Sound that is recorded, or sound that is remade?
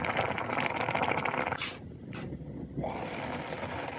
recorded